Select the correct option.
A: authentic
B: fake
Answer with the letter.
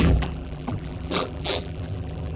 B